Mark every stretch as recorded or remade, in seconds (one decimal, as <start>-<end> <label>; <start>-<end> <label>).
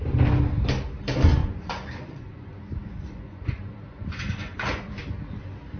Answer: 0.0-1.4 recorded; 1.4-4.9 remade; 4.9-5.8 recorded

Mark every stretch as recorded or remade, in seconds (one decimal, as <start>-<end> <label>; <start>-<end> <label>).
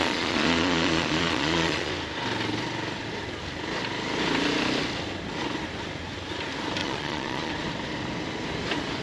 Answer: 0.0-1.9 remade; 1.9-6.8 recorded; 6.8-7.5 remade; 7.5-9.0 recorded